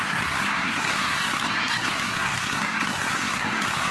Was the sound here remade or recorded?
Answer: remade